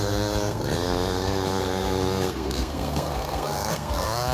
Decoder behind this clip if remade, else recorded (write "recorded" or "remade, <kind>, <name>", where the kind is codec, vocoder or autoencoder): remade, codec, SNAC